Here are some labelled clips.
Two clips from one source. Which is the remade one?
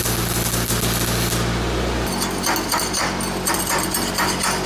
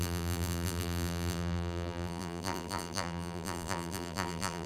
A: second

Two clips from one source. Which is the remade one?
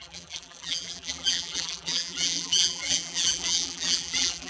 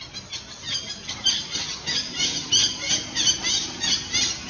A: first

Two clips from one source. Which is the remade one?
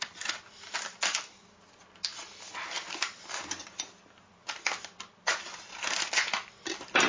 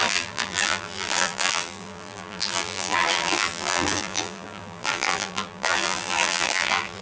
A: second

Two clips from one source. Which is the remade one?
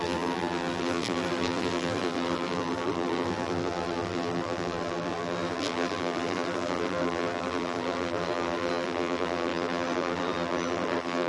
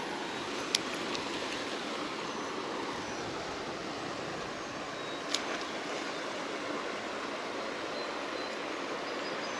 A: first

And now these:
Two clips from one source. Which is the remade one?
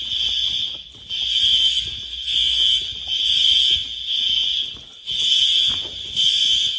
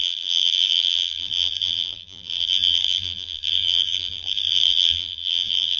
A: second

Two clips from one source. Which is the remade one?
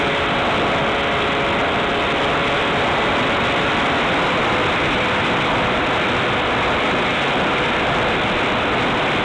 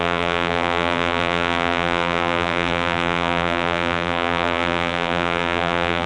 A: second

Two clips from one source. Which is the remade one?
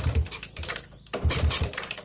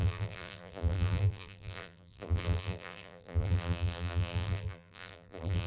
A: second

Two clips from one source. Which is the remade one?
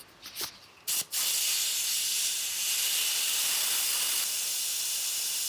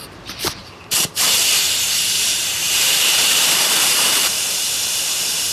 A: second